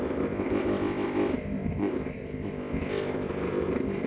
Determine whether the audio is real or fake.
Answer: fake